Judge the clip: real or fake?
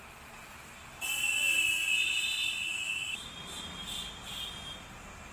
real